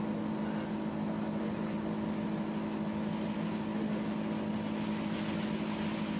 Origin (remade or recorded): recorded